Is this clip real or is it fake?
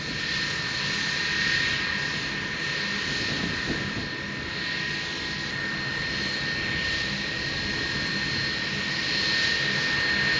real